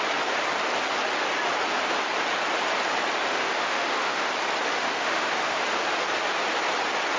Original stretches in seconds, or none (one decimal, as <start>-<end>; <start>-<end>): 0.0-3.3; 4.3-4.7; 5.6-7.2